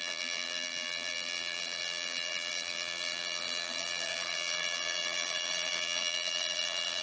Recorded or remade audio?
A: remade